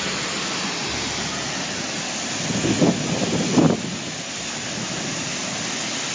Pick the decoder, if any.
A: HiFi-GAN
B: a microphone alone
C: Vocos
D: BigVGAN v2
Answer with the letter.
B